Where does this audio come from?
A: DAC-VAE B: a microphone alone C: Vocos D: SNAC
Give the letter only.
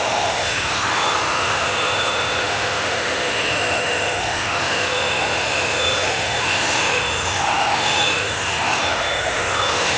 A